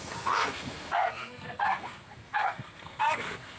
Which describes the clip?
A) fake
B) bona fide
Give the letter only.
A